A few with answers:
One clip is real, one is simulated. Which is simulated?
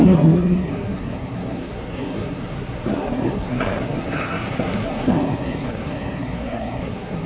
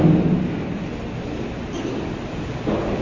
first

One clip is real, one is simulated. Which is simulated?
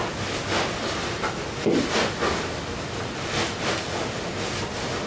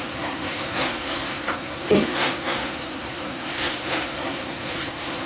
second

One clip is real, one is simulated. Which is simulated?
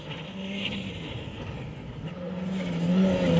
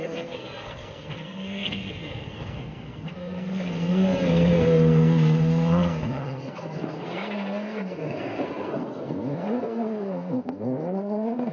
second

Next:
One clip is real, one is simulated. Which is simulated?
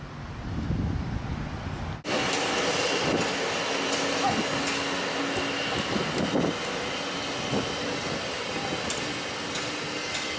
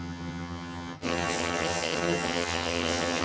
second